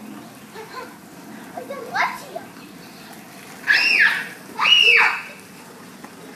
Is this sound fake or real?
real